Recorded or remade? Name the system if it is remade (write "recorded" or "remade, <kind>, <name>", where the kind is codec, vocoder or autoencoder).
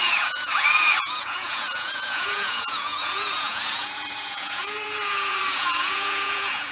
remade, vocoder, Vocos